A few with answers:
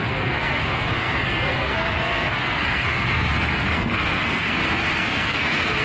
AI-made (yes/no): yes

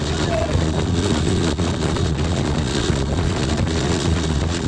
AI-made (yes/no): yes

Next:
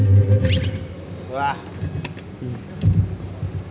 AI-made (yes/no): no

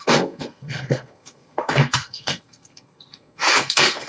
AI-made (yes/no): yes